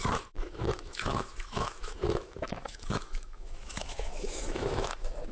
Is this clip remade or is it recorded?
remade